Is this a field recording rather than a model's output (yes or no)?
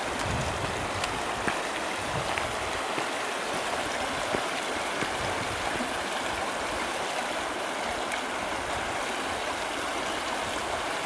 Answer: yes